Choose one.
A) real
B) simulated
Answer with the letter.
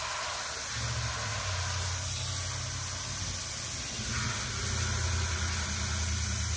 A